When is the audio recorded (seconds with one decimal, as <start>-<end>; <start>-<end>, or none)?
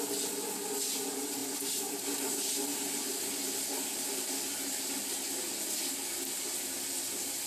0.0-1.4; 5.4-7.5